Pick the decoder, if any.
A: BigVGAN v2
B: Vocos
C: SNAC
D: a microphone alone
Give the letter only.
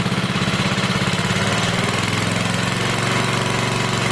D